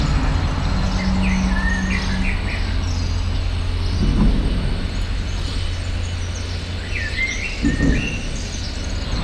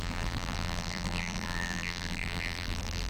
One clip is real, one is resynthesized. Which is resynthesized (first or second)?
second